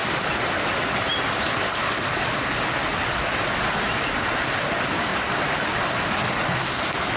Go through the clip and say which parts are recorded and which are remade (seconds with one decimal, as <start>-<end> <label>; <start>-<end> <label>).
0.0-0.6 remade; 0.6-7.2 recorded